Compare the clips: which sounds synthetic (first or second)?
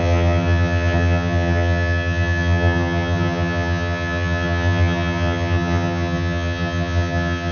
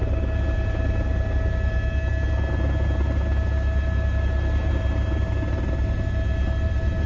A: first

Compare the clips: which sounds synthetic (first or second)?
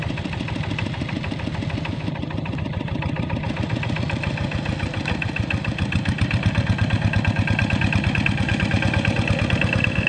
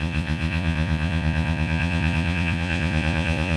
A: second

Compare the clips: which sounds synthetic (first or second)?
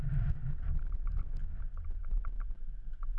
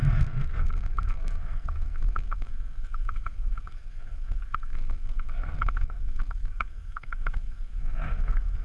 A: second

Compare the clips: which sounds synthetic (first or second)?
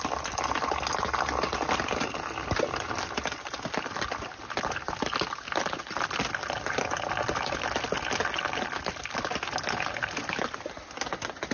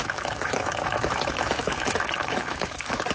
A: second